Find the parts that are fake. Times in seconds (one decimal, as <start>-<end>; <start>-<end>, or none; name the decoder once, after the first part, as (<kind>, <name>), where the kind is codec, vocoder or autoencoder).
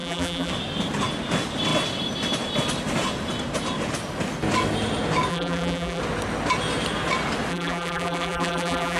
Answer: 0.0-0.5 (vocoder, BigVGAN v2); 5.3-6.0; 7.5-9.0